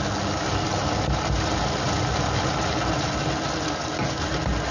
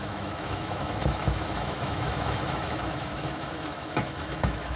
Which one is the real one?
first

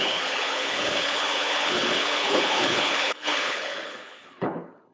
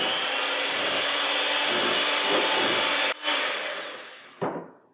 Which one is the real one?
second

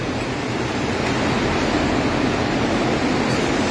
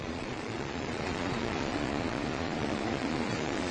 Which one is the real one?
first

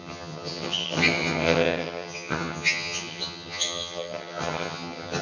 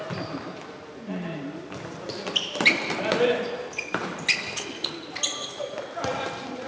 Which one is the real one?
second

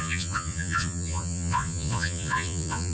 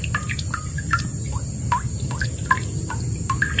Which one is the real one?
second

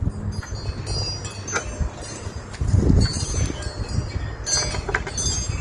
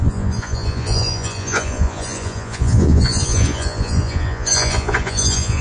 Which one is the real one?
first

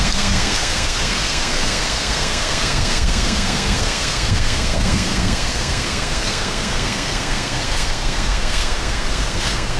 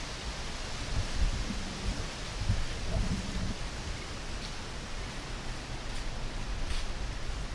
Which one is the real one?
second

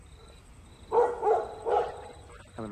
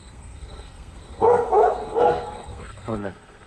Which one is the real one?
first